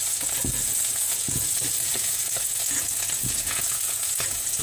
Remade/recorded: remade